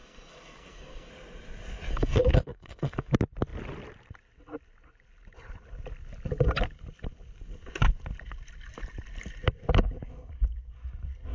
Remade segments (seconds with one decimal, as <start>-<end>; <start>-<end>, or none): 0.0-1.1; 1.9-3.1